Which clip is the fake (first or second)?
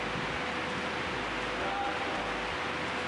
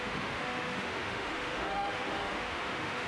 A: second